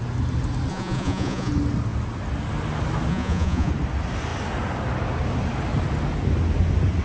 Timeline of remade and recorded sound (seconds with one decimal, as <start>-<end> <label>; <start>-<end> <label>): 0.0-0.7 recorded; 0.7-1.5 remade; 1.5-3.1 recorded; 3.1-3.7 remade; 3.7-7.0 recorded